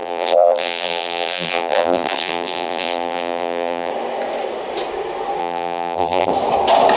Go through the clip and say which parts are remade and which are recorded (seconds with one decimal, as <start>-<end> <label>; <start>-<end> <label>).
0.0-3.9 remade; 3.9-5.4 recorded; 5.4-6.3 remade; 6.3-7.0 recorded

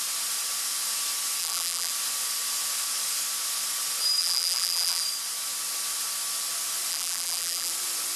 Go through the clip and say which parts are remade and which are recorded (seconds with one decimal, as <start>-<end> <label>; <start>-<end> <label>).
0.0-1.4 recorded; 1.4-1.9 remade; 1.9-4.2 recorded; 4.2-5.0 remade; 5.0-6.9 recorded; 6.9-7.7 remade; 7.7-8.2 recorded

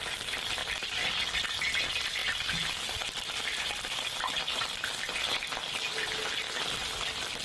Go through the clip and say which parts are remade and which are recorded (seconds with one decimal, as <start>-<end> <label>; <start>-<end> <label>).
0.0-0.6 remade; 0.6-1.5 recorded; 1.5-2.2 remade; 2.2-6.6 recorded; 6.6-7.4 remade